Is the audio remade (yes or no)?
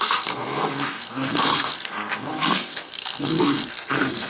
yes